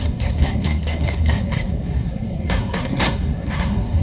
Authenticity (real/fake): fake